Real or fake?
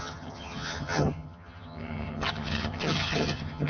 fake